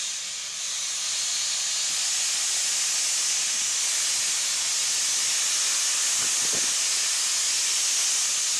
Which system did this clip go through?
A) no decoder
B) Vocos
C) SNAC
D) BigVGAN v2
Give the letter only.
A